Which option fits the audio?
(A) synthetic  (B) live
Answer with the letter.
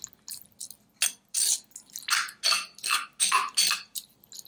B